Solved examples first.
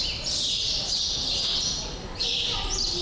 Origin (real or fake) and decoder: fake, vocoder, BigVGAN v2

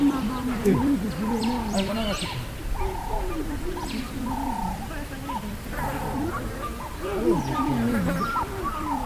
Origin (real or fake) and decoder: fake, vocoder, BigVGAN v2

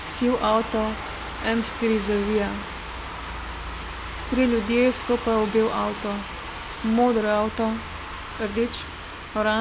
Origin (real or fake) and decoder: real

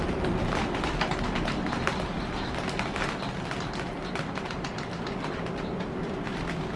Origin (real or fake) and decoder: real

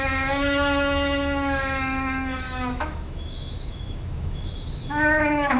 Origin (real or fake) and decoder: fake, autoencoder, DAC-VAE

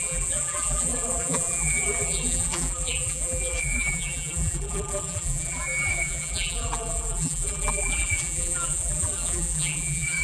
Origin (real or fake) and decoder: fake, vocoder, BigVGAN v2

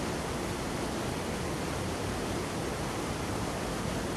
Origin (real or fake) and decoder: real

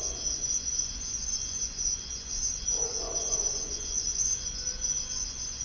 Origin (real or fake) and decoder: fake, vocoder, Vocos